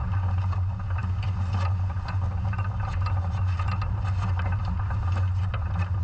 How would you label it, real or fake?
real